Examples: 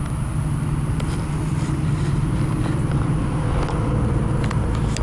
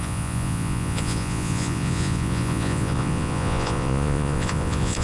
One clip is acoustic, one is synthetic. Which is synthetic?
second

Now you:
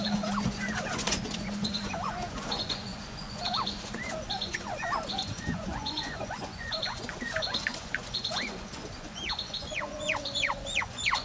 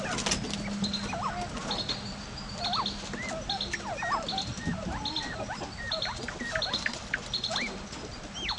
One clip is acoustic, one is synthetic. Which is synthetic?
first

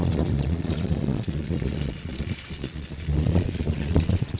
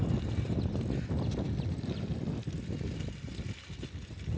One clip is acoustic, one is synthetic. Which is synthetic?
first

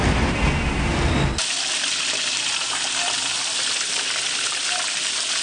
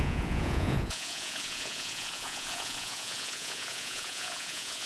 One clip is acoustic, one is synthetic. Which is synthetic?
second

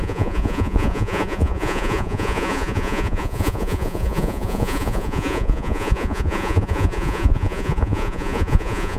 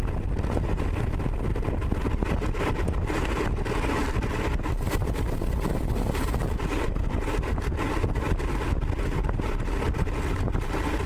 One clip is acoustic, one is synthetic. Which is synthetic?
first